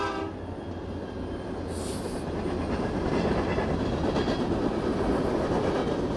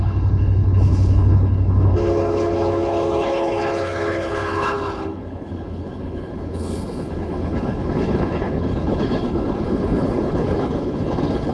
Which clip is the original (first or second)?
first